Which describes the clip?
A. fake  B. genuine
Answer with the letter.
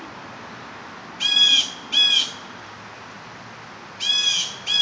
B